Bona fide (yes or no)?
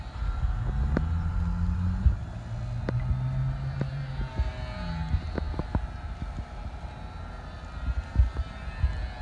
yes